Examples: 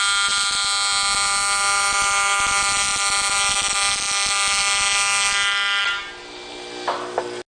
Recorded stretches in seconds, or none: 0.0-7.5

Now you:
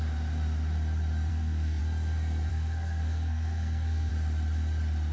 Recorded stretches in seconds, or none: 0.0-1.3; 1.8-2.5; 4.1-5.1

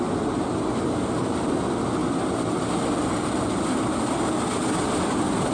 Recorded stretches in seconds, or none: 2.0-5.5

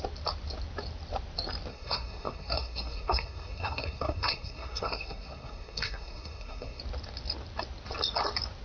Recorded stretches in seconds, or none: 0.0-1.7; 6.8-8.6